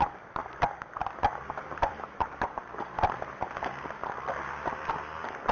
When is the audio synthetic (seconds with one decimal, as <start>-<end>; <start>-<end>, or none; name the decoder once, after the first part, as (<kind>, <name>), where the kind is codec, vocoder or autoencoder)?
0.0-0.4 (vocoder, BigVGAN v2); 1.4-4.0; 4.9-5.5